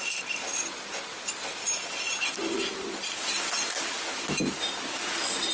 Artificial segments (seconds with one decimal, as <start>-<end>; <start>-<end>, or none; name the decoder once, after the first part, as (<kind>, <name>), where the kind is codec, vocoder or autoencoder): none